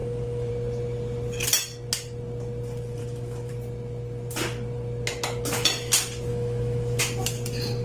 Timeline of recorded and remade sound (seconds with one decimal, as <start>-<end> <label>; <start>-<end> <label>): 0.0-0.5 remade; 0.5-3.0 recorded; 3.0-3.5 remade; 3.5-6.3 recorded; 6.3-7.0 remade; 7.0-7.8 recorded